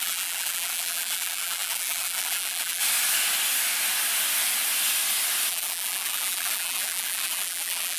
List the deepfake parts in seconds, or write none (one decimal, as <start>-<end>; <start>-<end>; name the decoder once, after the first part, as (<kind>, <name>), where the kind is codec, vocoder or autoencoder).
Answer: 0.0-2.8 (vocoder, BigVGAN v2); 5.5-8.0

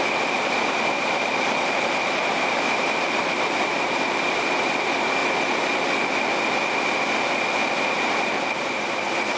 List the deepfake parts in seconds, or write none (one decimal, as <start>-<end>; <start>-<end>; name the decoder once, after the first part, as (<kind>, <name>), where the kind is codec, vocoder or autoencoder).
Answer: 0.0-5.2 (vocoder, BigVGAN v2); 7.9-9.4

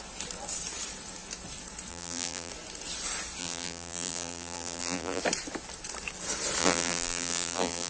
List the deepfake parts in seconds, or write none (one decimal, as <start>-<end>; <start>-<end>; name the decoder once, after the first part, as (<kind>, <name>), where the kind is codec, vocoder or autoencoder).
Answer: 1.9-2.5 (vocoder, BigVGAN v2); 3.4-5.2; 6.6-7.9

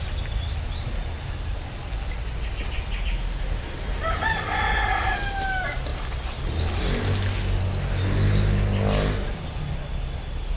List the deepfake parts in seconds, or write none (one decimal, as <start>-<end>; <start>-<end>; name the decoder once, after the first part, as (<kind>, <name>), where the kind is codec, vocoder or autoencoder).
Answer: none